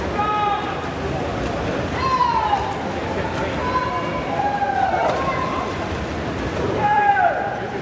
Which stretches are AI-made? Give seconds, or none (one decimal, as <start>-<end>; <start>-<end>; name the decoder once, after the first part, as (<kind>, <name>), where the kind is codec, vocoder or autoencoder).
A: none